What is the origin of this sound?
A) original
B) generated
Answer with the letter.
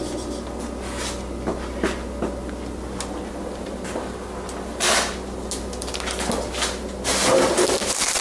A